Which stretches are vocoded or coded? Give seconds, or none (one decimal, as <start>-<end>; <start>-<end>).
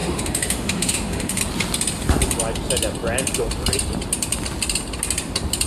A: 0.0-1.4